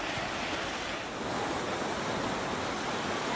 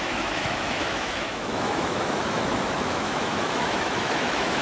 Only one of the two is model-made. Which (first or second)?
second